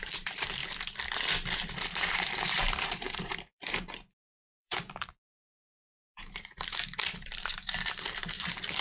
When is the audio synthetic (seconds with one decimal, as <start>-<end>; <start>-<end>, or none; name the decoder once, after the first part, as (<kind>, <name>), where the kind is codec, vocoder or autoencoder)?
0.0-0.6 (vocoder, BigVGAN v2); 1.6-8.8